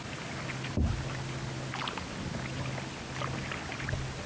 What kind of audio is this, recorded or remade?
recorded